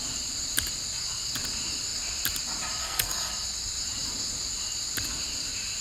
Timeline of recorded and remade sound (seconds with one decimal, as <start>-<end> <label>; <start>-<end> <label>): 0.0-2.8 recorded; 2.8-3.3 remade; 3.3-5.8 recorded